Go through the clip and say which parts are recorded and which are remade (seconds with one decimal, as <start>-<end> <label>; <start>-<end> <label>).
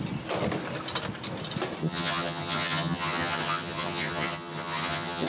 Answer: 0.0-1.8 recorded; 1.8-5.3 remade